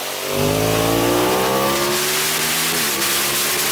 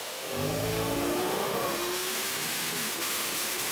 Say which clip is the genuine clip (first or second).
first